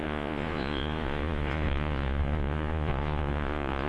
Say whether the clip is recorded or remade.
remade